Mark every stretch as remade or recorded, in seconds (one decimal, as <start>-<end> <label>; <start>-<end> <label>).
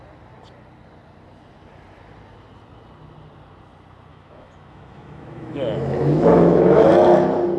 0.0-4.1 recorded; 4.1-6.9 remade; 6.9-7.6 recorded